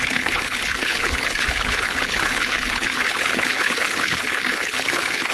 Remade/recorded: remade